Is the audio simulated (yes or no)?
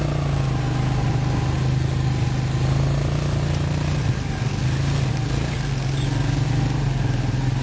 no